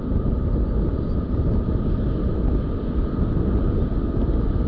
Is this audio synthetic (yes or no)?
yes